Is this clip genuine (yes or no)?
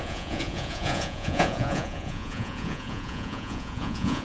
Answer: no